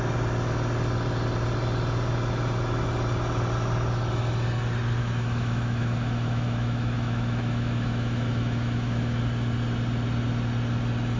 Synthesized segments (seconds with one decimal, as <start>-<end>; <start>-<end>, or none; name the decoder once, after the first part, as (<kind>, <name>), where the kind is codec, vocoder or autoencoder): 5.0-9.2 (autoencoder, DAC-VAE)